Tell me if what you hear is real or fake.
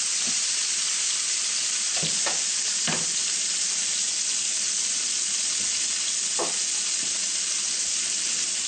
real